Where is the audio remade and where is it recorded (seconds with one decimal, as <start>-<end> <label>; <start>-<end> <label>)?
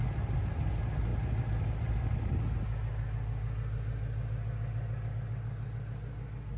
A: 0.0-6.6 recorded